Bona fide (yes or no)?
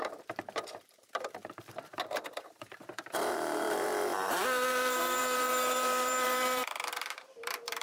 no